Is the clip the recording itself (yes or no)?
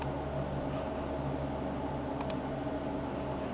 yes